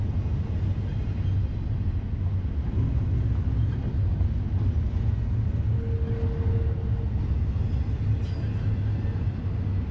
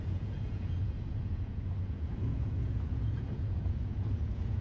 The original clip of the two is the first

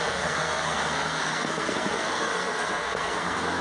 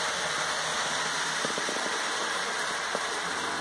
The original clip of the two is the second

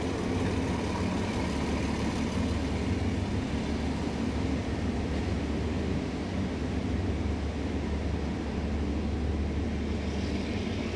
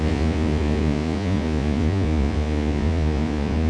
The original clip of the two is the first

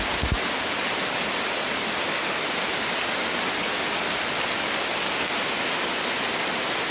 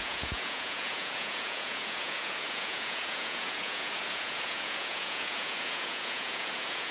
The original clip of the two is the first